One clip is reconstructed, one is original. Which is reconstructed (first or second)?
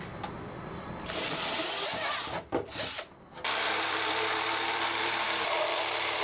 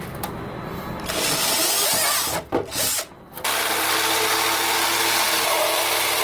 first